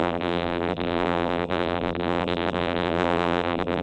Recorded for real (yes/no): no